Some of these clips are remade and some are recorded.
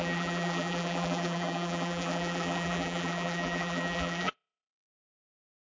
remade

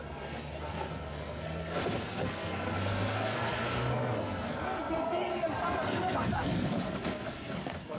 remade